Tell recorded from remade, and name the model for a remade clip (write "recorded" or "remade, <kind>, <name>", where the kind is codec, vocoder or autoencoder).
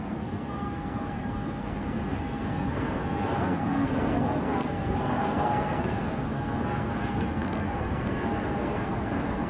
remade, codec, SNAC